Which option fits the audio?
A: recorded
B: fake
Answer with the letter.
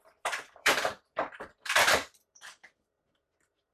B